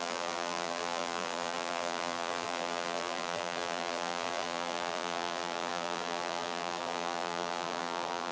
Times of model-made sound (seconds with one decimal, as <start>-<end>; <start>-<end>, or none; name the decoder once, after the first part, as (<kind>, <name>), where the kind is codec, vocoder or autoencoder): 0.0-8.3 (vocoder, BigVGAN v2)